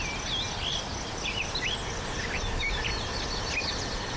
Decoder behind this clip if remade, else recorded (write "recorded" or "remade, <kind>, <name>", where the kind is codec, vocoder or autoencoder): recorded